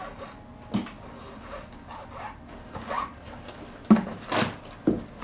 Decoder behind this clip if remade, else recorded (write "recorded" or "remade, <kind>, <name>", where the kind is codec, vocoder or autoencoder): recorded